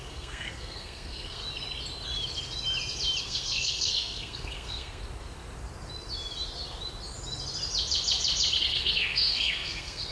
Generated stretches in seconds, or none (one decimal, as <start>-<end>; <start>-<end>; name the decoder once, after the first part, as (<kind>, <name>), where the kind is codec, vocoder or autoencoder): 0.0-1.4 (codec, SNAC); 3.2-5.0; 8.6-10.1

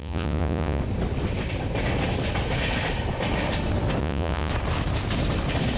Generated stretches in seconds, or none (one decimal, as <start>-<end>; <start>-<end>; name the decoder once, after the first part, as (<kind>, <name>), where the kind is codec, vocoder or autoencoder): 0.0-0.8 (vocoder, Vocos); 4.0-4.5

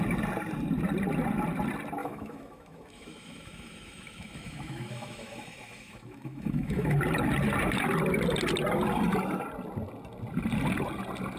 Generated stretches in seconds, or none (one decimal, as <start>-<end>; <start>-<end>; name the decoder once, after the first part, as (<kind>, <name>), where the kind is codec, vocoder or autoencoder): 2.0-7.0 (autoencoder, DAC-VAE)

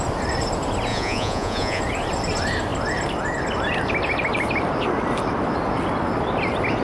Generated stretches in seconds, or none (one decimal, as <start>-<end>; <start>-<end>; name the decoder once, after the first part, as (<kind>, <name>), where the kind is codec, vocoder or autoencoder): 0.9-1.8 (vocoder, Vocos)

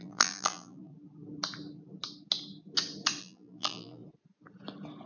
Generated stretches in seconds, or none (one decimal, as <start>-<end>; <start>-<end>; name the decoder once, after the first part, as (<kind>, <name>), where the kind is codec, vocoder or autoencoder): 0.0-0.9 (vocoder, BigVGAN v2); 3.2-4.0

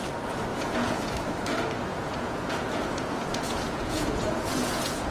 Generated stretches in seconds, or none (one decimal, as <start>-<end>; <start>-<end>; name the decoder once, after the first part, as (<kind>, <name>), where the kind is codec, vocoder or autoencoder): 0.5-1.1 (vocoder, Vocos); 1.9-5.1

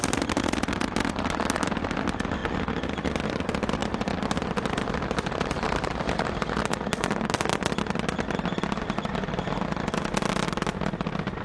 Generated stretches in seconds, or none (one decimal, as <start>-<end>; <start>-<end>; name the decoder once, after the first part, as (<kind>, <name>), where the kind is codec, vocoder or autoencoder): none

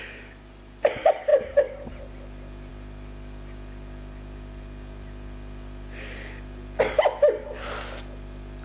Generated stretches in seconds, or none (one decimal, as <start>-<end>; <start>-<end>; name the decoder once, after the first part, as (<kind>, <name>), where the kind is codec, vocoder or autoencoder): none